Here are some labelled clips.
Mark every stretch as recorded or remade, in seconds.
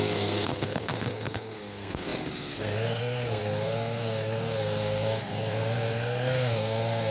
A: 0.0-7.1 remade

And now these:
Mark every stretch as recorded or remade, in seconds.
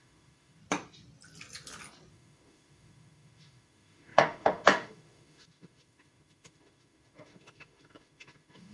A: 0.0-0.6 remade; 0.6-2.1 recorded; 2.1-8.7 remade